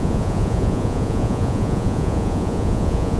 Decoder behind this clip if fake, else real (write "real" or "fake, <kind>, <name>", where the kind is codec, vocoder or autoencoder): fake, vocoder, Vocos